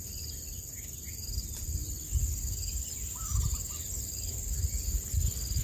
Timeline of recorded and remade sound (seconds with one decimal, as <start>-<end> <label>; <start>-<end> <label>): 0.0-5.6 recorded